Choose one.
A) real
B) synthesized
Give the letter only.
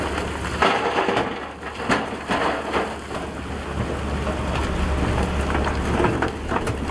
A